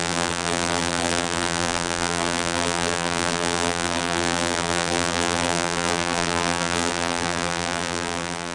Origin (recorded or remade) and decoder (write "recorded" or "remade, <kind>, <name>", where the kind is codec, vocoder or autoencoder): remade, vocoder, BigVGAN v2